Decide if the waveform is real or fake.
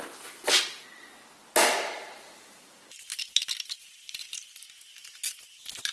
real